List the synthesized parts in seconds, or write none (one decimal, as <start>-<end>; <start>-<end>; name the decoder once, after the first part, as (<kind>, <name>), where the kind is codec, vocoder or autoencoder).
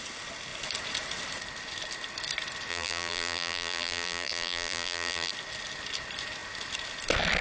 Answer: 2.7-5.3 (vocoder, BigVGAN v2)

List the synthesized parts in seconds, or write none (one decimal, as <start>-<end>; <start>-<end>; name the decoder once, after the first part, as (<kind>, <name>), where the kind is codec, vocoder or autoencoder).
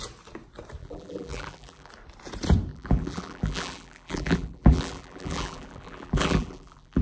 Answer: 0.8-1.9 (vocoder, BigVGAN v2); 2.7-7.0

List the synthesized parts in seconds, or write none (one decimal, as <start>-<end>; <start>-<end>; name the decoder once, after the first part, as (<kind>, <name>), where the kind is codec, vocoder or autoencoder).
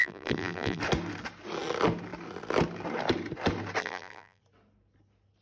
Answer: 0.0-0.8 (vocoder, BigVGAN v2); 3.8-4.4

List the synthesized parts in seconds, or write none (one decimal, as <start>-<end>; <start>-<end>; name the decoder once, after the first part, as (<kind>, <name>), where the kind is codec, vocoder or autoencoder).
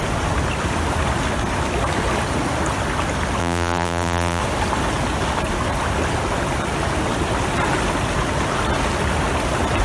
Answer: 3.4-4.4 (vocoder, BigVGAN v2)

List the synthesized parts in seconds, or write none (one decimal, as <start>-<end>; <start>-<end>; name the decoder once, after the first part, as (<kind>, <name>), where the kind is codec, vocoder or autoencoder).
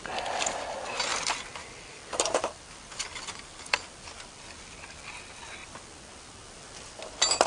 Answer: 1.1-3.6 (vocoder, BigVGAN v2)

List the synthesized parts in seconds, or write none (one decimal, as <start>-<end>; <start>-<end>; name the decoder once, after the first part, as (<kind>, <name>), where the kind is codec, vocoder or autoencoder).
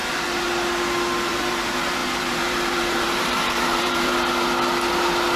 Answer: 1.2-4.1 (vocoder, BigVGAN v2)